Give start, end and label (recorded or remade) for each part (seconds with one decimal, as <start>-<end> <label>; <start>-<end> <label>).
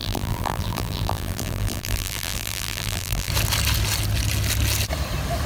0.0-3.3 remade; 3.3-5.5 recorded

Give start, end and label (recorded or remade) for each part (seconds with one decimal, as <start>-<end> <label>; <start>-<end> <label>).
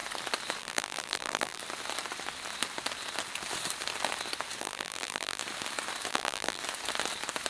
0.0-0.6 recorded; 0.6-1.6 remade; 1.6-4.6 recorded; 4.6-5.4 remade; 5.4-6.1 recorded; 6.1-6.6 remade; 6.6-7.5 recorded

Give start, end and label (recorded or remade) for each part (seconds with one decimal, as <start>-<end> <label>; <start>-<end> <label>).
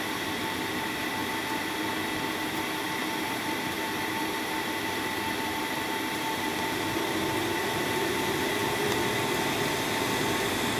0.0-8.6 remade; 8.6-10.8 recorded